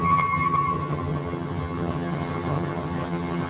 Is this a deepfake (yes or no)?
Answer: yes